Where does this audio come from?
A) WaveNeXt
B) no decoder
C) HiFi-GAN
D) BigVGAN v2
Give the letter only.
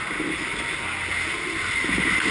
B